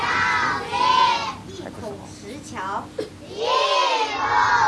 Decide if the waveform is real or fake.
real